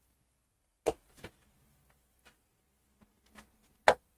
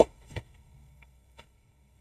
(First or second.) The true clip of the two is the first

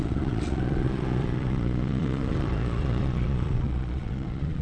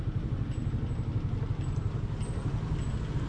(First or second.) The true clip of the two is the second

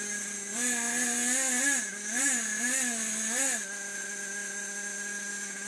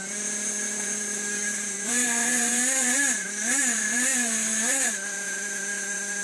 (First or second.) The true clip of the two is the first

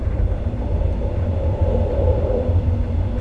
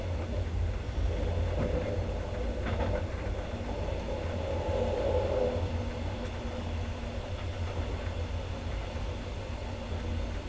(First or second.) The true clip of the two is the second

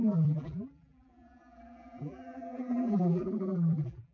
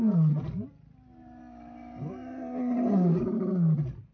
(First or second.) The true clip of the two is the second